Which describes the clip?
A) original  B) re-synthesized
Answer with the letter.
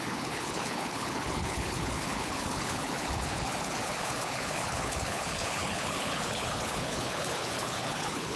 B